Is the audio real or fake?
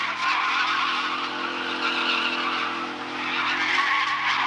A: real